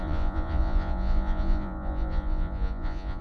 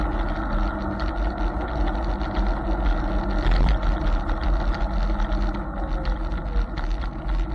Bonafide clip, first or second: second